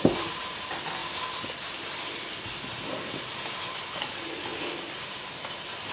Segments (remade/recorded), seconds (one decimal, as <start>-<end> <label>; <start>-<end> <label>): 0.0-4.5 recorded; 4.5-5.4 remade; 5.4-5.9 recorded